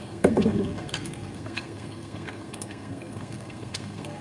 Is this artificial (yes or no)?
yes